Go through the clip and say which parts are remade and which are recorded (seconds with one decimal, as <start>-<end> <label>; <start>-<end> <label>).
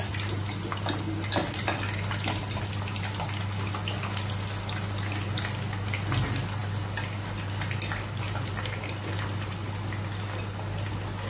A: 0.0-11.3 recorded